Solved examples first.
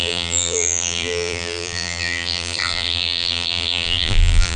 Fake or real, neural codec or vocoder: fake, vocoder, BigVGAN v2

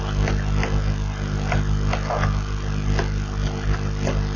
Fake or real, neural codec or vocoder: real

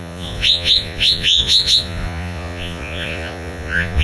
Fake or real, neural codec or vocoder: fake, vocoder, Vocos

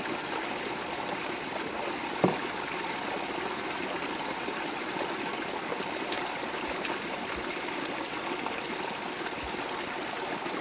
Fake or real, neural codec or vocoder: real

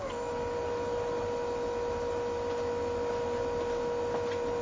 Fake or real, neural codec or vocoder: real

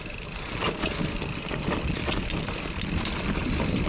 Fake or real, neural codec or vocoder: real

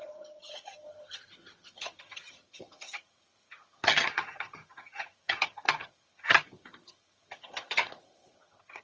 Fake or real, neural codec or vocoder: fake, vocoder, HiFi-GAN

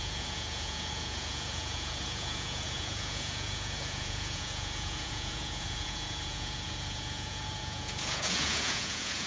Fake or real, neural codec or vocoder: fake, vocoder, Vocos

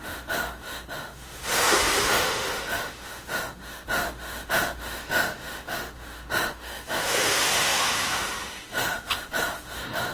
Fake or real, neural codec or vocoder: fake, autoencoder, DAC-VAE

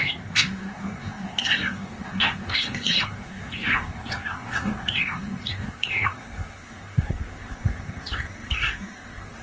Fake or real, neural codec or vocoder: fake, codec, SNAC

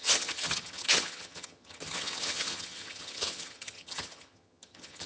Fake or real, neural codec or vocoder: fake, vocoder, HiFi-GAN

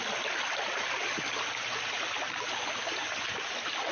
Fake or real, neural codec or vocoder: real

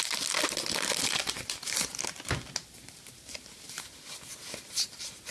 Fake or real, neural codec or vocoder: real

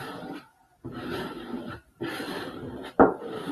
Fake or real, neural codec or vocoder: fake, vocoder, BigVGAN v2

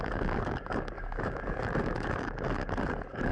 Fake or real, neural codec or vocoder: fake, codec, DAC